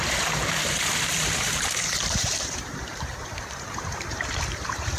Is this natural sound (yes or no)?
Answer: no